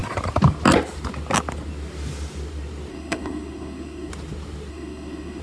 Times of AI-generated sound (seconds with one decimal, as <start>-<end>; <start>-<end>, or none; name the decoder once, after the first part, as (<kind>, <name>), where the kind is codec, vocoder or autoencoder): 2.9-4.1 (codec, SNAC); 4.7-5.4